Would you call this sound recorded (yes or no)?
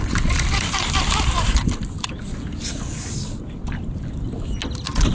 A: yes